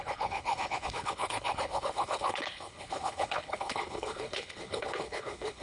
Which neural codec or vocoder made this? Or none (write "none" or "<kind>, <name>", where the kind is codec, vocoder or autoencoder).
codec, HILCodec